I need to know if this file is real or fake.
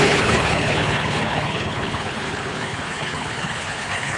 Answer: fake